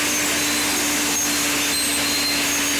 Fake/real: real